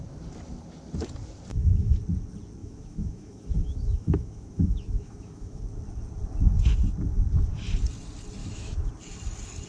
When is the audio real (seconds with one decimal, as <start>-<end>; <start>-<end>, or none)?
0.0-1.5; 2.0-2.6; 5.6-8.4; 8.9-9.7